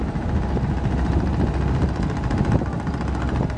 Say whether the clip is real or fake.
real